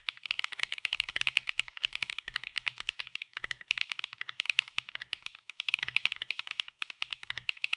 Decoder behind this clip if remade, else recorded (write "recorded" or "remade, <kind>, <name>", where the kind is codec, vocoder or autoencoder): remade, codec, DAC